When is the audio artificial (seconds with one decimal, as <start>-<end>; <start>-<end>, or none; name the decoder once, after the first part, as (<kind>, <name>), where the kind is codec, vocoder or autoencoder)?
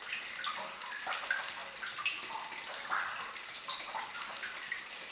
none